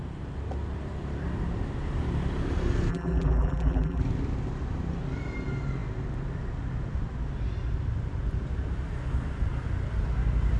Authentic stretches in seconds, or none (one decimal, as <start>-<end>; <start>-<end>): 0.0-2.9; 4.0-10.6